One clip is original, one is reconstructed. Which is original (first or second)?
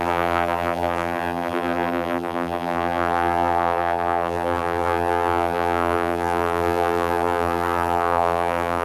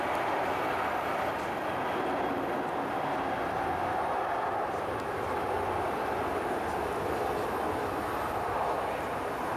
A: second